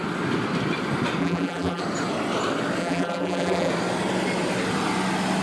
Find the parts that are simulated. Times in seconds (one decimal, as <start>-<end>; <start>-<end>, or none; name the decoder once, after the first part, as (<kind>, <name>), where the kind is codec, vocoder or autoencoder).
1.2-1.8 (vocoder, BigVGAN v2); 2.8-3.7